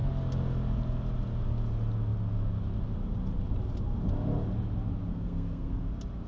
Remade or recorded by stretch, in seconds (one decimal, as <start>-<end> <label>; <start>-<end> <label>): 0.0-5.1 recorded; 5.1-5.8 remade; 5.8-6.3 recorded